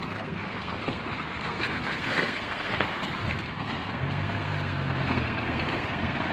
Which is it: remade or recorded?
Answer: remade